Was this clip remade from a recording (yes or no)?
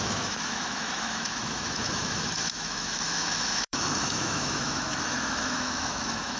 yes